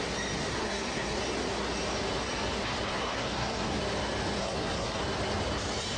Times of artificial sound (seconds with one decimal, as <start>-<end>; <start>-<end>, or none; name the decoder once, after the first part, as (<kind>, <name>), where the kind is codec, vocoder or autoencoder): 0.5-1.2 (codec, SNAC); 2.9-3.8; 4.4-5.0